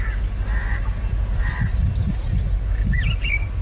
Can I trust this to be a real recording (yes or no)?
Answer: yes